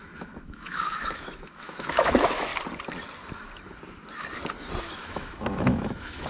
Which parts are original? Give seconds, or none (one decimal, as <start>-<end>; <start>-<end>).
2.5-4.8